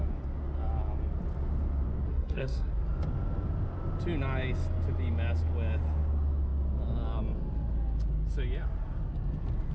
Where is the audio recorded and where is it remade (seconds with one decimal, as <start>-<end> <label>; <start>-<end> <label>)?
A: 0.0-2.1 recorded; 2.1-2.7 remade; 2.7-9.7 recorded